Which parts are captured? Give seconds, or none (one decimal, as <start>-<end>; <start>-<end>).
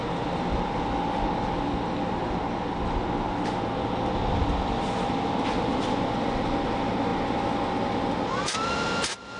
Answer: 0.0-9.4